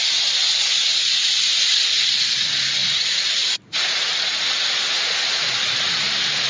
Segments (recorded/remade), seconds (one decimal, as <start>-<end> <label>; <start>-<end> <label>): 0.0-0.5 recorded; 0.5-1.4 remade; 1.4-2.8 recorded; 2.8-4.4 remade; 4.4-6.5 recorded